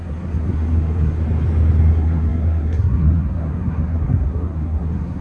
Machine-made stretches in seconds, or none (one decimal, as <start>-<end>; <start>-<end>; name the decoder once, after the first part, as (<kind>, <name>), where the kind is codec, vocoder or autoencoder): 0.0-1.2 (codec, SNAC); 1.9-5.2